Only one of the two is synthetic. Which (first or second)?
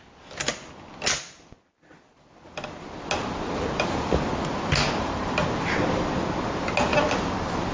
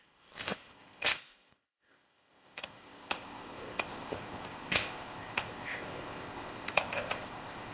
second